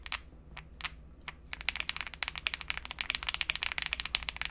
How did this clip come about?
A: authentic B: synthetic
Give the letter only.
A